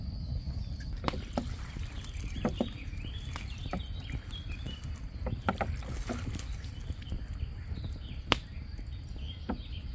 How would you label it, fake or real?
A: real